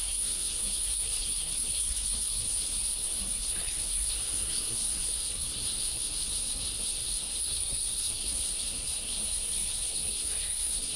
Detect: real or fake fake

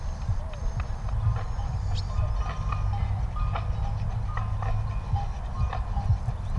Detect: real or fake real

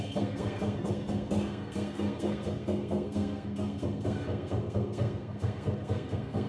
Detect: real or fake fake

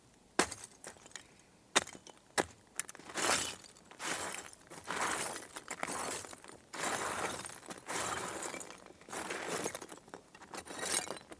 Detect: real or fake real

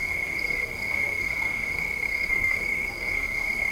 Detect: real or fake fake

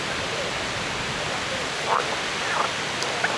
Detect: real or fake real